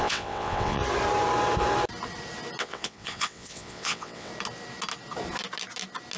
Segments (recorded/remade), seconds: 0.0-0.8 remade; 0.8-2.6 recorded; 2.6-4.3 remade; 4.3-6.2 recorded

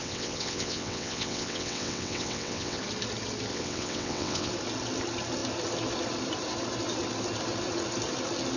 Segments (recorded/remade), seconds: 0.0-2.8 remade; 2.8-3.5 recorded; 3.5-4.5 remade; 4.5-8.6 recorded

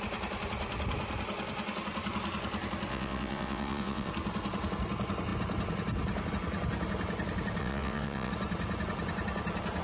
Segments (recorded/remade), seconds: 0.0-2.9 recorded; 2.9-4.1 remade; 4.1-7.6 recorded; 7.6-8.3 remade; 8.3-9.8 recorded

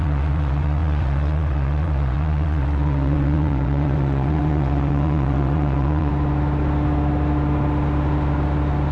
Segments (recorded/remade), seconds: 0.0-6.1 remade; 6.1-8.9 recorded

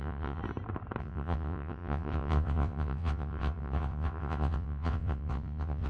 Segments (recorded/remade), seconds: 0.0-0.4 remade; 0.4-1.0 recorded; 1.0-5.9 remade

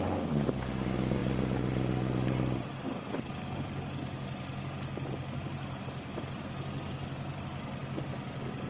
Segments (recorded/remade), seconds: 0.0-8.7 recorded

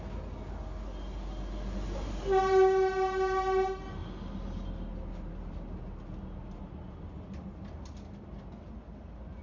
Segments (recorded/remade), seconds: 0.0-9.4 recorded